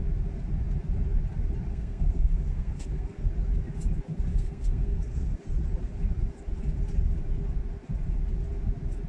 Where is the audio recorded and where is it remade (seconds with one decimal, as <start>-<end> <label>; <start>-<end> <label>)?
0.0-1.7 recorded; 1.7-3.3 remade; 3.3-4.3 recorded; 4.3-5.4 remade; 5.4-9.1 recorded